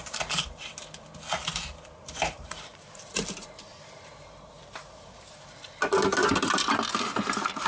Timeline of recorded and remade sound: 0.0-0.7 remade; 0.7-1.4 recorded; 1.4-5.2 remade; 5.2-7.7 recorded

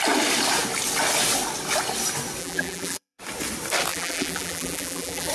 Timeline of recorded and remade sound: 0.0-2.4 recorded; 2.4-3.2 remade; 3.2-3.9 recorded; 3.9-5.3 remade

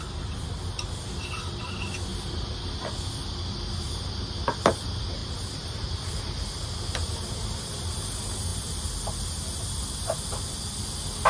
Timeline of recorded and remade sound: 0.0-5.2 recorded; 5.2-6.2 remade; 6.2-11.3 recorded

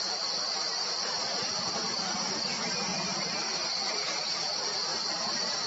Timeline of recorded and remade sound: 0.0-0.7 recorded; 0.7-1.9 remade; 1.9-2.9 recorded; 2.9-3.9 remade; 3.9-4.9 recorded; 4.9-5.7 remade

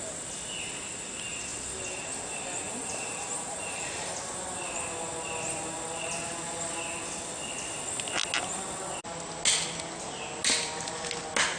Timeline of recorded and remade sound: 0.0-2.7 recorded; 2.7-4.6 remade; 4.6-11.6 recorded

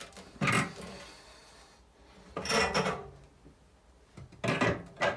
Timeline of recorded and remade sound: 0.0-5.2 recorded

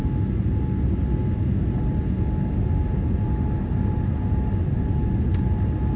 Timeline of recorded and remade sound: 0.0-6.0 recorded

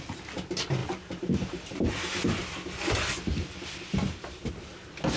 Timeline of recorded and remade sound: 0.0-0.8 recorded; 0.8-1.9 remade; 1.9-5.2 recorded